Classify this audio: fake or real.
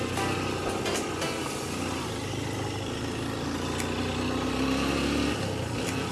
real